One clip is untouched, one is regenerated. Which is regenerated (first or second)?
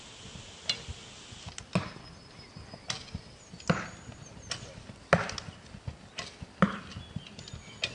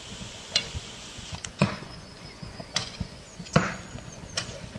second